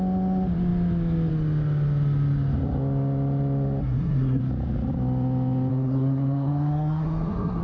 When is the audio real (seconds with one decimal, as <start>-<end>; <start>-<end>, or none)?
0.0-3.8; 4.4-5.7